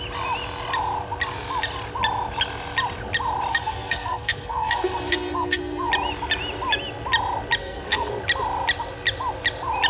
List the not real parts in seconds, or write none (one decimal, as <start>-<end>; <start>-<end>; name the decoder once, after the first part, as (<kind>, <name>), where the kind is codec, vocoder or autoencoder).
3.5-5.9 (codec, SNAC); 7.6-8.1